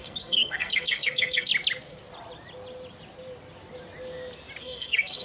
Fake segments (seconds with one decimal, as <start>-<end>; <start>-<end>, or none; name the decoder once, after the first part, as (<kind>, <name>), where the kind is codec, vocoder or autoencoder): 0.0-1.5 (codec, SNAC); 4.6-5.2